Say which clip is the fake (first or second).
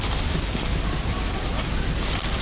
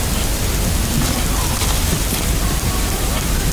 second